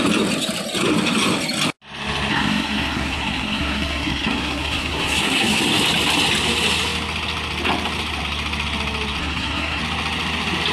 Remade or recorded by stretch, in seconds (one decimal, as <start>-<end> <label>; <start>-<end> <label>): 0.0-2.3 recorded; 2.3-5.6 remade; 5.6-9.2 recorded; 9.2-9.8 remade; 9.8-10.7 recorded